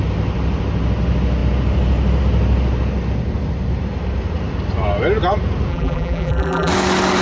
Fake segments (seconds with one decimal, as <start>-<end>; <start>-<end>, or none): 5.7-6.7